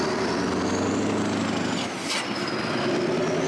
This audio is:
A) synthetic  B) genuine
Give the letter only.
B